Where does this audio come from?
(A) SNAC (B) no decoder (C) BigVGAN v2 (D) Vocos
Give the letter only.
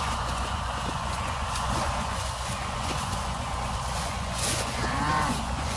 D